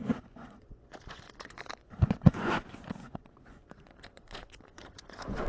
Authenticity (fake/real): fake